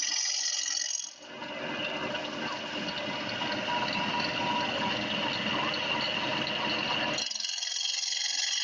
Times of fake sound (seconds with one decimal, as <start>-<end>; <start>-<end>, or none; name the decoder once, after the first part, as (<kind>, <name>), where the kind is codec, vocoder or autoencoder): none